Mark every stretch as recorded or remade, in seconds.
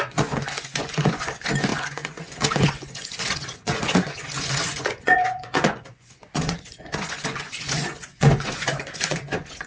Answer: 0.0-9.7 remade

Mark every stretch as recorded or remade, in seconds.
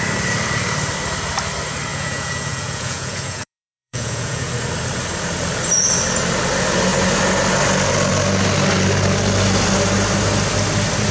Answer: 0.0-1.9 recorded; 1.9-4.5 remade; 4.5-11.1 recorded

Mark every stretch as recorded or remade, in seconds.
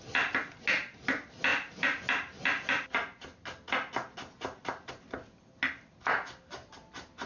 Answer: 0.0-7.3 recorded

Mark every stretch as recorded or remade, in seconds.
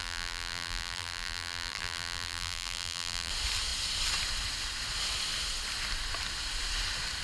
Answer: 0.0-3.3 remade; 3.3-7.2 recorded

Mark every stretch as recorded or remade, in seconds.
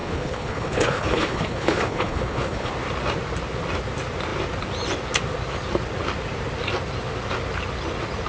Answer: 0.0-2.7 remade; 2.7-8.3 recorded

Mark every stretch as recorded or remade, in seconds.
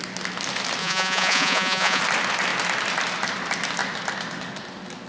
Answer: 0.0-0.8 recorded; 0.8-2.0 remade; 2.0-5.1 recorded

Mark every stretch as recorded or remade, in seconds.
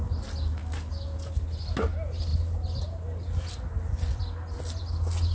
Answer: 0.0-5.3 recorded